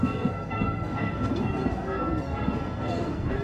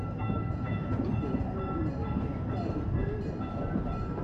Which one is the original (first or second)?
second